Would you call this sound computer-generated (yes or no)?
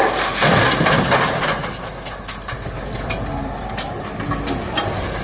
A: no